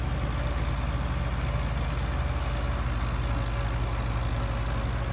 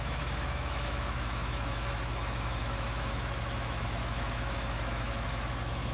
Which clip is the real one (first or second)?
first